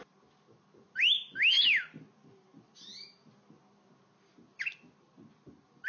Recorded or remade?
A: recorded